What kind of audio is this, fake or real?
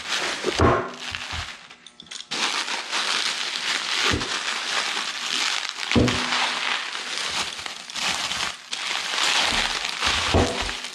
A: real